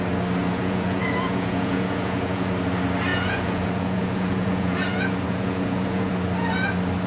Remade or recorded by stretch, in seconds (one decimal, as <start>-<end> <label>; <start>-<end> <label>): 0.0-0.4 recorded; 0.4-2.5 remade; 2.5-3.1 recorded; 3.1-6.1 remade; 6.1-7.1 recorded